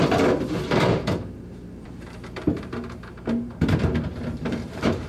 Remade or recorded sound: remade